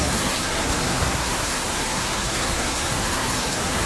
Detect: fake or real fake